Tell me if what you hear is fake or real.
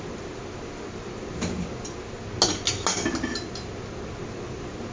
real